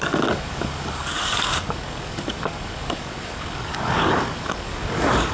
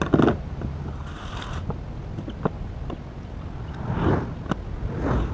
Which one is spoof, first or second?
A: first